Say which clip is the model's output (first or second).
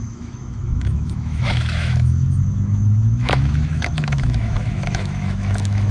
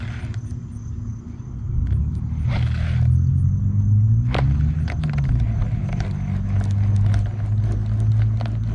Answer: first